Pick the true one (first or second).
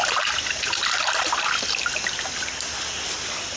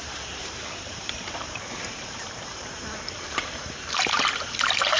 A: first